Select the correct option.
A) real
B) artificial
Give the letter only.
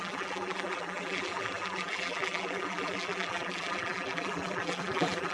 B